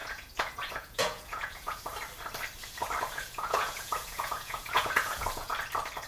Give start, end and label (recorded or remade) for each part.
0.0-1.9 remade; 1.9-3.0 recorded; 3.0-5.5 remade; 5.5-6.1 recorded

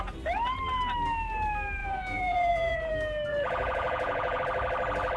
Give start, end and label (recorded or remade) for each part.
0.0-1.8 recorded; 1.8-2.9 remade; 2.9-3.3 recorded; 3.3-4.4 remade; 4.4-5.2 recorded

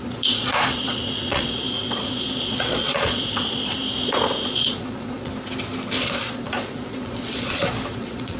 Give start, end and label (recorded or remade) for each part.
0.0-5.3 remade; 5.3-6.0 recorded; 6.0-8.4 remade

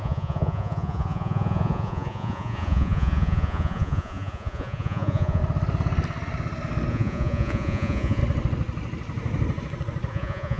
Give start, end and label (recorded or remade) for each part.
0.0-5.4 remade; 5.4-6.9 recorded; 6.9-8.2 remade; 8.2-10.1 recorded; 10.1-10.6 remade

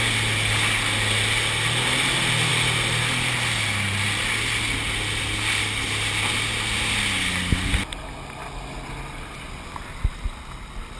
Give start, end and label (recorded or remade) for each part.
0.0-11.0 recorded

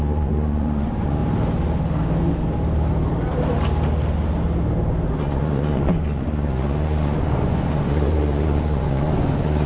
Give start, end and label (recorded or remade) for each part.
0.0-1.2 remade; 1.2-5.2 recorded; 5.2-9.7 remade

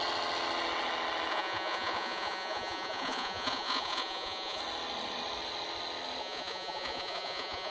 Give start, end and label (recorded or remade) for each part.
0.0-1.3 recorded; 1.3-4.6 remade; 4.6-6.2 recorded; 6.2-7.7 remade

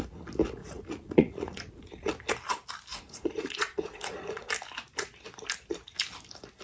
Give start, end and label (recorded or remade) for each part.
0.0-0.6 recorded; 0.6-2.1 remade; 2.1-2.9 recorded; 2.9-4.5 remade; 4.5-6.6 recorded